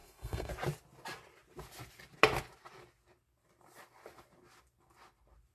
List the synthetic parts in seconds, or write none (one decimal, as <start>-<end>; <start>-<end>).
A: 0.0-0.5